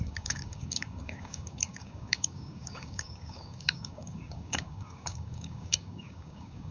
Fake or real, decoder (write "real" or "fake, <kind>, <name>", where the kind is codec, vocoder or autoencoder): fake, codec, DAC